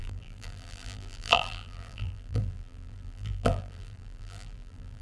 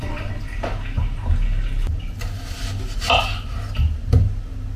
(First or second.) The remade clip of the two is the first